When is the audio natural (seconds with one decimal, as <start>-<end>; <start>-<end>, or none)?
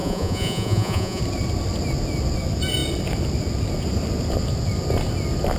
1.2-5.6